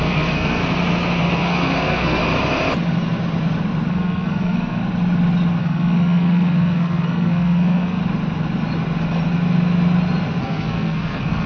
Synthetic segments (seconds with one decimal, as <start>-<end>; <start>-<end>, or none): 0.0-0.6; 1.2-2.2; 3.9-4.8; 5.6-8.0; 10.4-11.5